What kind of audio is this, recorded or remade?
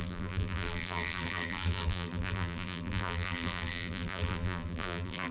remade